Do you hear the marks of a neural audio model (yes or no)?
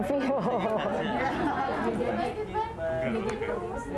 no